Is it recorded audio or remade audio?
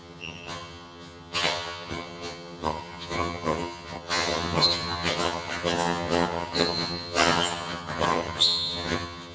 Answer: remade